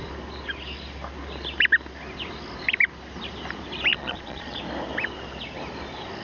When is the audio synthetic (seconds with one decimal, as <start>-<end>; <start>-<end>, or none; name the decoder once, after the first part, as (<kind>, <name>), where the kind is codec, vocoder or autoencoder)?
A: 3.9-4.6 (vocoder, Vocos)